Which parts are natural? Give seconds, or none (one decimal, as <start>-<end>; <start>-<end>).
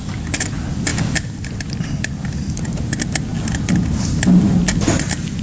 0.0-5.4